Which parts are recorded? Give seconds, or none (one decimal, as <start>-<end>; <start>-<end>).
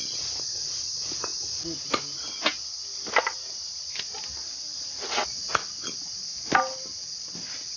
0.0-7.8